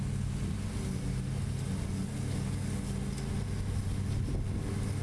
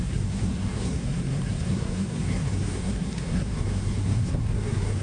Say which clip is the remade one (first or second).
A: second